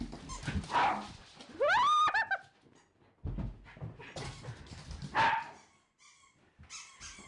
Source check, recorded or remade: recorded